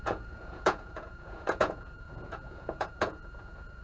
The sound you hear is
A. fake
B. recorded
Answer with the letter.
A